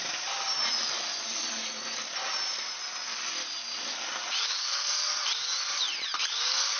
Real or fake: real